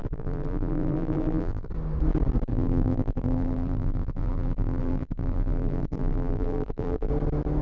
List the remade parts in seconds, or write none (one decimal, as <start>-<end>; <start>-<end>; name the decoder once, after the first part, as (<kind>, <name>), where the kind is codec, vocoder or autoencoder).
0.0-1.7 (vocoder, BigVGAN v2); 2.5-7.1